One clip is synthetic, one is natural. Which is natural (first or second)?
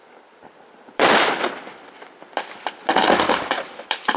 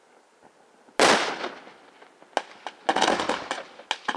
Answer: second